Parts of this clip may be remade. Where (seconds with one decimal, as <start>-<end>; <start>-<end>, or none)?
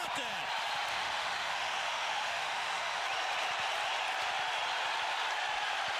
0.9-3.0